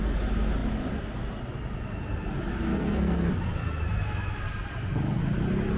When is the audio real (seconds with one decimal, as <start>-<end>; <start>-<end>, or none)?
0.0-2.7; 3.3-5.8